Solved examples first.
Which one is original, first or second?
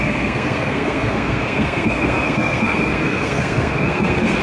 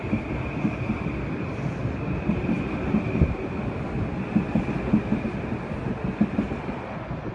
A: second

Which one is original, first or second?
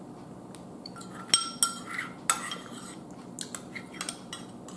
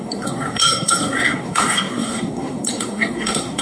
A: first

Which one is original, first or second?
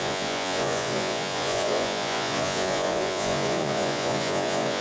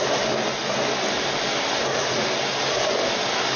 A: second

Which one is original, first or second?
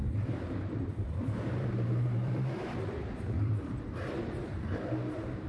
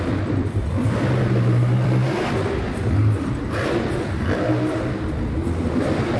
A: second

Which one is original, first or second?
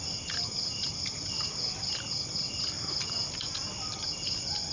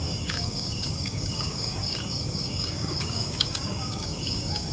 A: first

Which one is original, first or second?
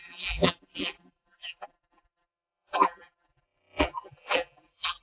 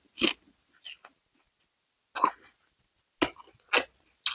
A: second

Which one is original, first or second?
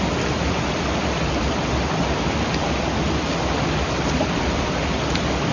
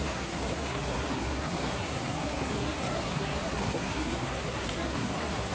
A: first